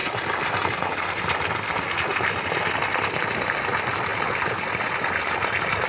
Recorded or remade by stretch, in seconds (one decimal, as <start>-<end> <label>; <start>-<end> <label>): 0.0-5.9 recorded